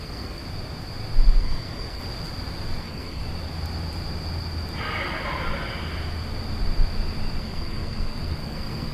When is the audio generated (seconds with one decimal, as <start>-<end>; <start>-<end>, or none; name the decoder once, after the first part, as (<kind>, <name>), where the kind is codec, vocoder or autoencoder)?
0.0-0.4 (codec, SNAC); 1.4-2.0; 2.8-3.2; 7.4-8.9